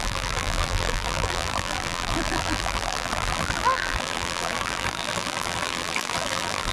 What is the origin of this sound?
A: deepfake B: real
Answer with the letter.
A